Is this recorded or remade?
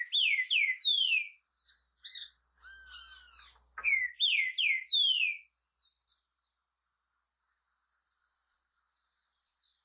recorded